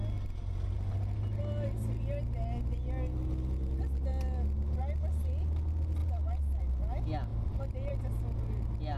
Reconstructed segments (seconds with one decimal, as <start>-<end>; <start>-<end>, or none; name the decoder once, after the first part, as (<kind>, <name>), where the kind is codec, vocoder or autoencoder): none